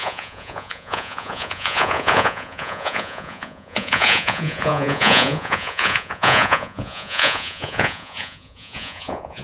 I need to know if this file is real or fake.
fake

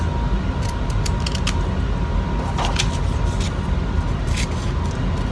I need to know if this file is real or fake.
real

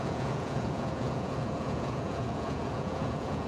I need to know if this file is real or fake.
fake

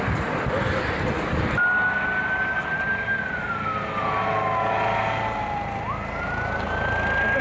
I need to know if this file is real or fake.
real